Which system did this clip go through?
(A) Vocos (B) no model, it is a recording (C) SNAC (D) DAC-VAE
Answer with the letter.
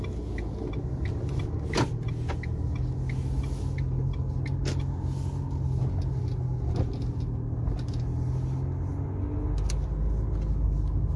B